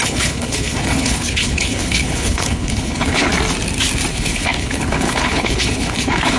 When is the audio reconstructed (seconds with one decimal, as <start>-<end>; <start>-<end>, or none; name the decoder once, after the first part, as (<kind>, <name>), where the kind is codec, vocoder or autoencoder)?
0.0-3.3 (codec, HILCodec); 4.1-6.4